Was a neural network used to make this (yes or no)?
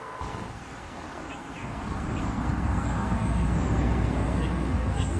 yes